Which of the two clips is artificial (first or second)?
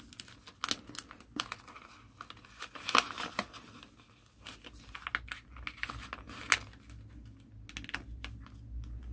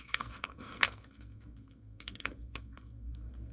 second